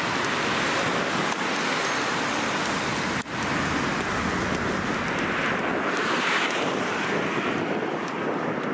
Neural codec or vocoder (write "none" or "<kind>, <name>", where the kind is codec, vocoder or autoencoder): none